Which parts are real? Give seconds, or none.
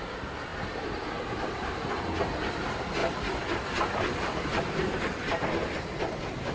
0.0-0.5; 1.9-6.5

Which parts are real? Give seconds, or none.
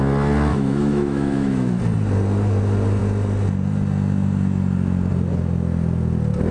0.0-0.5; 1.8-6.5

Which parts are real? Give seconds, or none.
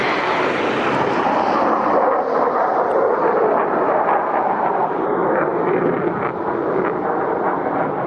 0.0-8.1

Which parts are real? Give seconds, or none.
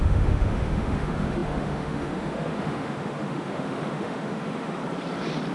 4.8-5.5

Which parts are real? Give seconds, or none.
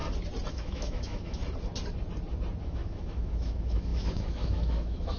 0.0-0.5; 1.4-2.6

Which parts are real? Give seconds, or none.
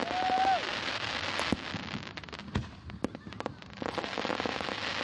0.0-5.0